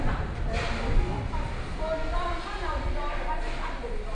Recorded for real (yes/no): yes